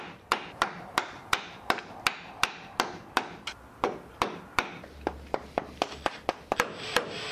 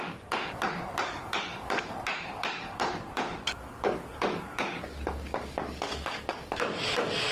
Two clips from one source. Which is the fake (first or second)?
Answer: second